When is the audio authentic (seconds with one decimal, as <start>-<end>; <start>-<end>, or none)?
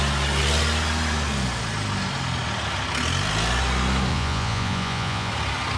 0.0-4.1; 5.3-5.8